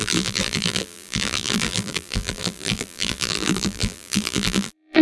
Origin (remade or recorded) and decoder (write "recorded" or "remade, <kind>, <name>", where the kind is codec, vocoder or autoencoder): remade, vocoder, BigVGAN v2